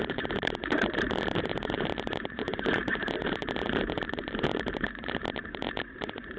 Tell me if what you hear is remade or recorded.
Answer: remade